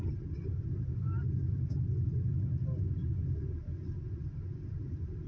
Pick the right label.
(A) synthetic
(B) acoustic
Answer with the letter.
B